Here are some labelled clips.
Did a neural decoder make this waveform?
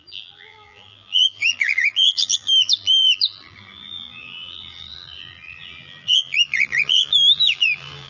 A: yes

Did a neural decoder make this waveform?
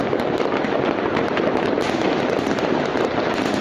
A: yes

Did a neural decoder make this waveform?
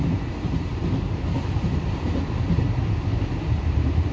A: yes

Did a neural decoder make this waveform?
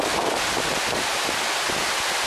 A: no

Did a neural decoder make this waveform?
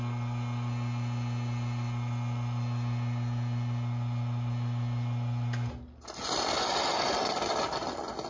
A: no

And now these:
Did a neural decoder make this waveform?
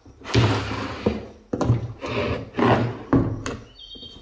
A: no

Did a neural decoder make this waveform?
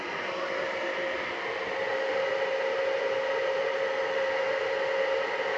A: no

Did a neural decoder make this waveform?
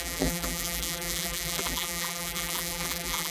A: yes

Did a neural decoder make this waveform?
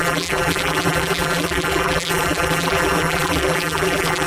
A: yes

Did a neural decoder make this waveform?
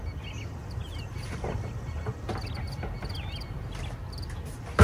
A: no